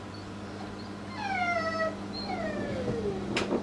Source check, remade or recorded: recorded